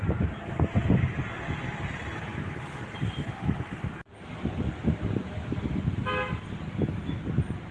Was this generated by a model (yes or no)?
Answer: no